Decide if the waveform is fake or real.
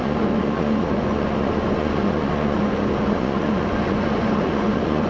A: fake